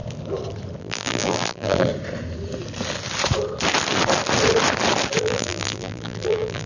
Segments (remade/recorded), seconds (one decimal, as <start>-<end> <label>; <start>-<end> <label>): 0.0-0.8 recorded; 0.8-1.9 remade; 1.9-5.2 recorded; 5.2-6.7 remade